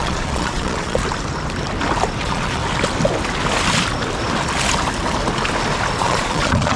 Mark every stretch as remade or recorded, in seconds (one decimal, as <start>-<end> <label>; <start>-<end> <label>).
0.0-1.0 remade; 1.0-2.2 recorded; 2.2-2.6 remade; 2.6-6.0 recorded; 6.0-6.8 remade

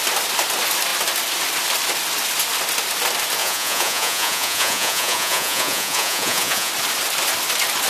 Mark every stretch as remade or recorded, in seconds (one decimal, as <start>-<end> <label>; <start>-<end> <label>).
0.0-3.4 recorded; 3.4-6.7 remade; 6.7-7.9 recorded

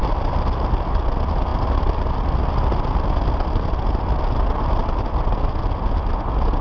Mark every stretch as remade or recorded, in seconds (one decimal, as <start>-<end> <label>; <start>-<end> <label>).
0.0-6.6 recorded

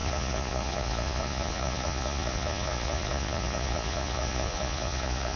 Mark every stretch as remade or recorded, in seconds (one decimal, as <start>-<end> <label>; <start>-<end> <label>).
0.0-5.4 remade

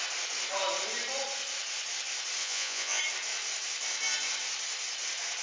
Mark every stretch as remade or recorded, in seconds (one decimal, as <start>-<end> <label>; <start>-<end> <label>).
0.0-2.4 recorded; 2.4-3.0 remade; 3.0-5.4 recorded

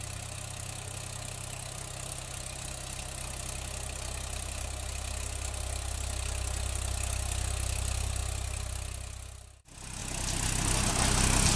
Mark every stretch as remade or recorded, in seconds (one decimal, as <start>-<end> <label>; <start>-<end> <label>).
0.0-11.6 recorded

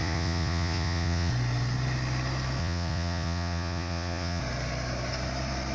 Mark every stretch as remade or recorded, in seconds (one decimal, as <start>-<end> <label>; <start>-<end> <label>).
0.0-1.3 remade; 1.3-2.6 recorded; 2.6-4.4 remade; 4.4-5.7 recorded